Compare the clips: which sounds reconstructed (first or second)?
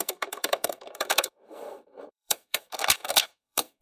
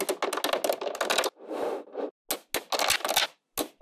first